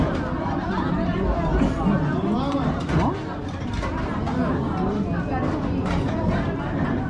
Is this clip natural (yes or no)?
yes